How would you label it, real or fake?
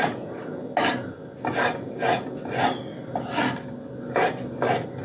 real